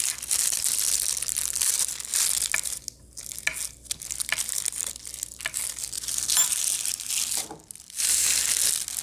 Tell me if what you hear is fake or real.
real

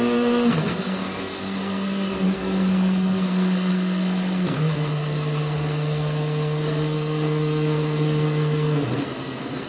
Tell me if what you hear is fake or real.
fake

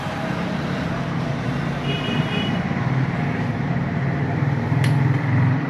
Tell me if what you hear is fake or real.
fake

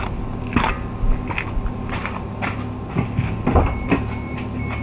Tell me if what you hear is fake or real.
real